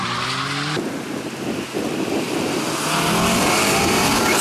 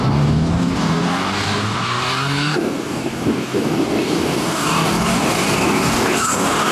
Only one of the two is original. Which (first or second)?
first